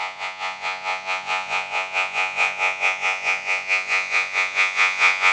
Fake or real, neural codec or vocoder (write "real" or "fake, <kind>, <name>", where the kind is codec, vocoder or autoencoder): fake, vocoder, Vocos